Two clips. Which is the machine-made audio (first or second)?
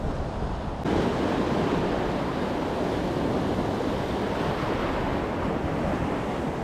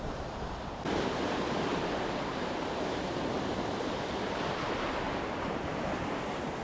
second